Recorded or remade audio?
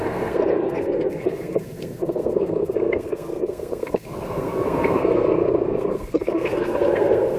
remade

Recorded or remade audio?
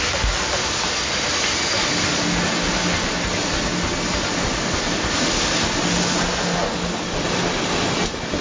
recorded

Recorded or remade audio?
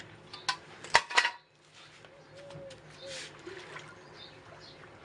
recorded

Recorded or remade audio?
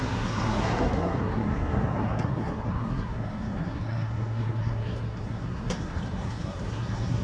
remade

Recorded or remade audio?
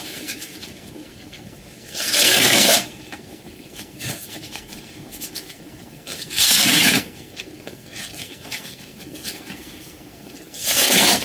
remade